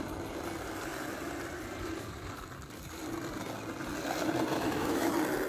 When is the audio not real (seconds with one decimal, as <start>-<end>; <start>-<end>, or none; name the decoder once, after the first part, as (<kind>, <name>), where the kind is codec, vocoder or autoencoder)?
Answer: 4.5-5.1 (autoencoder, DAC-VAE)